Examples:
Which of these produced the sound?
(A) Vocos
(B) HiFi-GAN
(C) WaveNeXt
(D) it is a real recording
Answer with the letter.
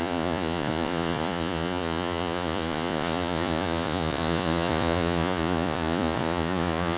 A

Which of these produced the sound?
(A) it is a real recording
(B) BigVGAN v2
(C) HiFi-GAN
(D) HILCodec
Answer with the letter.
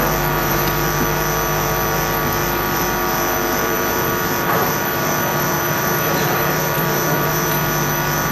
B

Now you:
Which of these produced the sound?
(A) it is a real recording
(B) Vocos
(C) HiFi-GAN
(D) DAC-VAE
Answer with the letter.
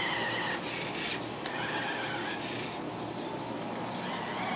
A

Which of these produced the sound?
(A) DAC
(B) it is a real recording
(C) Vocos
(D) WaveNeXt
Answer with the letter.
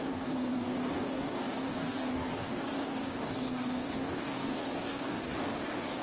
A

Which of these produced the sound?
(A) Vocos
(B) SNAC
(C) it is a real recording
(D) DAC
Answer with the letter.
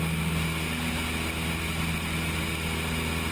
C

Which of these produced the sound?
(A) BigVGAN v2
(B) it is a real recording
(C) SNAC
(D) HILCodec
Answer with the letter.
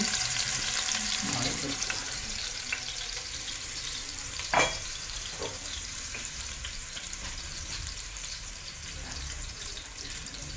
A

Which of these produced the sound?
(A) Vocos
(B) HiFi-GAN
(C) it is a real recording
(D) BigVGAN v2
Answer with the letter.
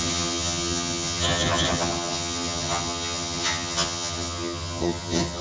B